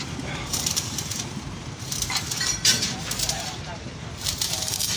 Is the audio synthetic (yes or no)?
yes